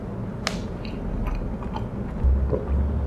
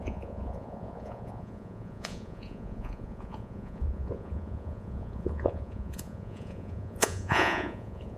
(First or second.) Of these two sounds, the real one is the first